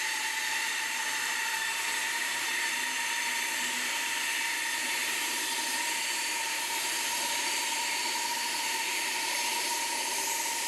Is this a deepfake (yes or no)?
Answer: yes